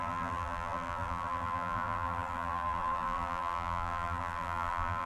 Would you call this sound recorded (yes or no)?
no